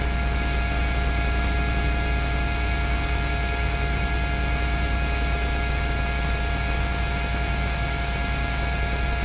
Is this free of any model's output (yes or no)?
no